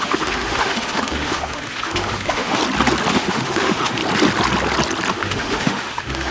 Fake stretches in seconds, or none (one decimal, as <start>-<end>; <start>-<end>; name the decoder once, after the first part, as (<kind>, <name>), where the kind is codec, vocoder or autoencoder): 0.0-2.6 (autoencoder, DAC-VAE); 3.1-4.0; 5.1-6.3